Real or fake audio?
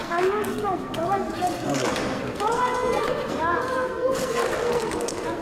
fake